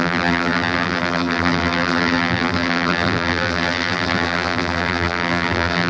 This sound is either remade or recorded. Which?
remade